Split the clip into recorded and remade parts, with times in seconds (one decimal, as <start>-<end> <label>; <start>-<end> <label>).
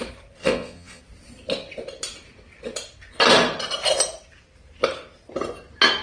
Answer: 0.0-0.4 recorded; 0.4-1.0 remade; 1.0-6.0 recorded